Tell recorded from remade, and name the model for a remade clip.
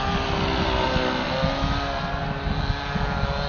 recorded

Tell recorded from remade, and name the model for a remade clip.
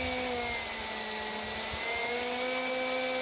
recorded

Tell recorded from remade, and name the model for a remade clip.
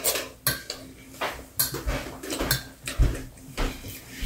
recorded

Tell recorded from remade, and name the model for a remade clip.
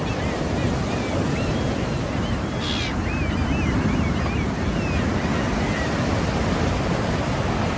recorded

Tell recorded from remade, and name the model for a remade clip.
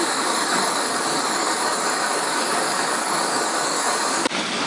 remade, codec, DAC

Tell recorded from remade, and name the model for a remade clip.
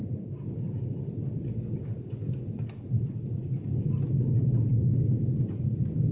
recorded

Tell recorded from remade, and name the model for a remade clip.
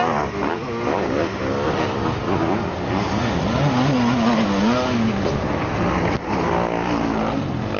recorded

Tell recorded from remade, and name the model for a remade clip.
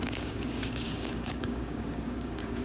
remade, codec, DAC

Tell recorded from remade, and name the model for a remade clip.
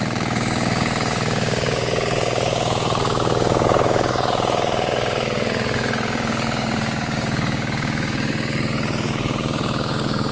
remade, codec, DAC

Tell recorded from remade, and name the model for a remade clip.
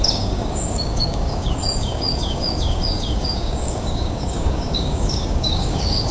remade, codec, DAC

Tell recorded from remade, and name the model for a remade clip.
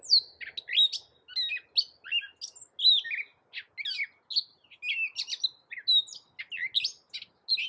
recorded